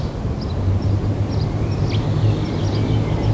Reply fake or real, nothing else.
real